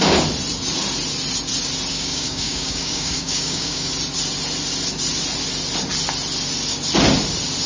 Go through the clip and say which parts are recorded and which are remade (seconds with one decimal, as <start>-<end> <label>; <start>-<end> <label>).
0.0-1.9 recorded; 1.9-3.9 remade; 3.9-7.7 recorded